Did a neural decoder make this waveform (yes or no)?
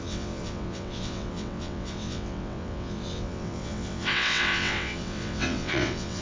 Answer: yes